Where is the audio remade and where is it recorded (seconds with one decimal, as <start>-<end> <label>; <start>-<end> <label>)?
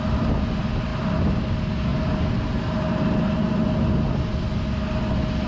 0.0-5.5 recorded